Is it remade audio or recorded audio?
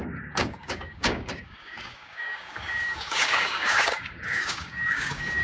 remade